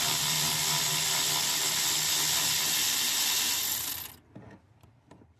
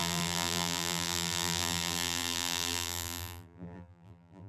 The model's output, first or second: second